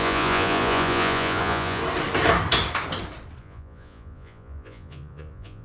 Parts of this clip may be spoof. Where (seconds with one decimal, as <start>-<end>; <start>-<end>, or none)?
0.0-1.8; 3.4-5.6